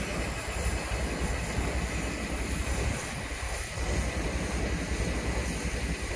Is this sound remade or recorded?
recorded